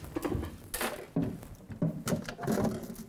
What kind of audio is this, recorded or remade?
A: recorded